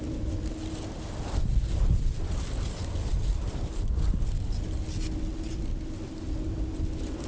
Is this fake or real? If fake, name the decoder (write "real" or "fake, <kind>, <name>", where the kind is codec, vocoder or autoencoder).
real